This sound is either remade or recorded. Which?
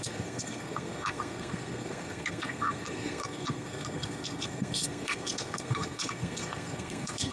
remade